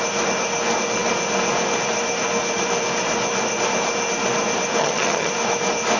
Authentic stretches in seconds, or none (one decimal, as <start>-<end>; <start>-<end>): 0.0-4.8; 5.3-6.0